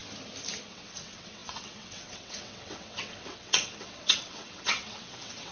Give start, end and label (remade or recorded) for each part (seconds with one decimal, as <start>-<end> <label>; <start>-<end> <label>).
0.0-0.7 recorded; 0.7-5.5 remade